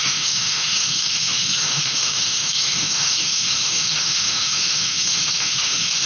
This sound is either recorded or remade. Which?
remade